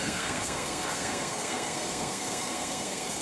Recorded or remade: remade